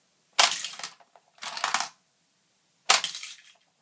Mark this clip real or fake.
real